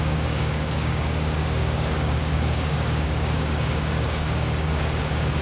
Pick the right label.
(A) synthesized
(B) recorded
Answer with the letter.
A